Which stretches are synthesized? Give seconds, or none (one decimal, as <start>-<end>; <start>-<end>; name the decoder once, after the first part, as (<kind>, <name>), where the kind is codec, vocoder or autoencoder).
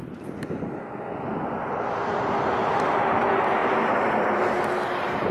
none